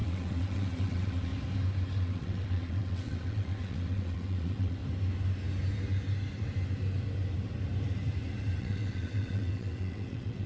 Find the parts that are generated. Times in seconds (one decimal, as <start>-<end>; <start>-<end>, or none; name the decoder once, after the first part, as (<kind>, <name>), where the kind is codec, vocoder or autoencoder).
0.0-1.3 (vocoder, WaveNeXt); 2.0-4.8; 8.6-10.5